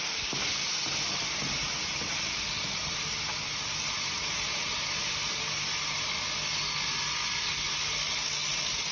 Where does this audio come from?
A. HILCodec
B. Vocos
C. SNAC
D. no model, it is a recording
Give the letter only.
D